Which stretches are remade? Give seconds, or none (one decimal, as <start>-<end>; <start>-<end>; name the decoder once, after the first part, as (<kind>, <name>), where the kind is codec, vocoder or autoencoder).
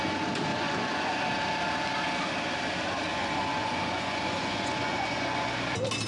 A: 0.5-1.2 (vocoder, Vocos); 3.1-5.5